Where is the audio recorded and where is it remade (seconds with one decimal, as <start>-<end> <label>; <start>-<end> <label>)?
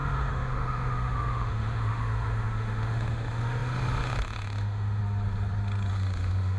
0.0-5.0 remade; 5.0-5.9 recorded; 5.9-6.6 remade